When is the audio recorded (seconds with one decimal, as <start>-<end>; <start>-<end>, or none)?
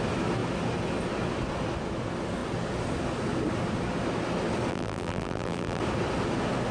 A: 0.0-4.7; 5.8-6.7